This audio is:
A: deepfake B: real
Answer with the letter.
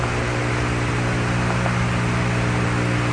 B